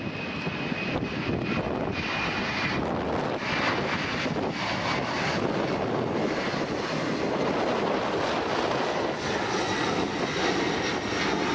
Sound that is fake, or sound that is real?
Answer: real